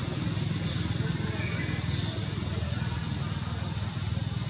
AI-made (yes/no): no